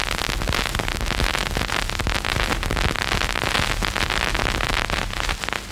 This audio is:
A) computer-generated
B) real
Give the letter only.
B